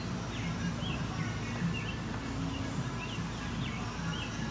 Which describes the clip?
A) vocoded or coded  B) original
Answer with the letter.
B